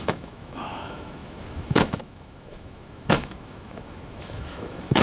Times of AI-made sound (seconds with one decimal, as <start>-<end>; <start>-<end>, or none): 0.0-5.0